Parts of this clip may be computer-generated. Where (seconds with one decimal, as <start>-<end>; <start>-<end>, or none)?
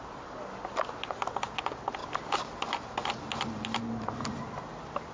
none